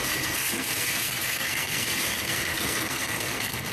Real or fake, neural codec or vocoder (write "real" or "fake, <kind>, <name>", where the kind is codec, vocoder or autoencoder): fake, codec, SNAC